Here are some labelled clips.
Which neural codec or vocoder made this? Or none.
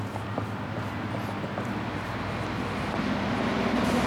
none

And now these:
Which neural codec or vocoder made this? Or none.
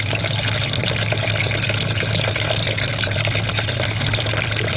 vocoder, BigVGAN v2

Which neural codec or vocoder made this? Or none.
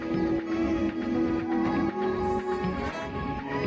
none